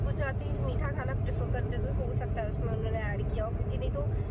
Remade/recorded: recorded